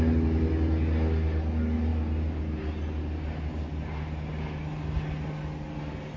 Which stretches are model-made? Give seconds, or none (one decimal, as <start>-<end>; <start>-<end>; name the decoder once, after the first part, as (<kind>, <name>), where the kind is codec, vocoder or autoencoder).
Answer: none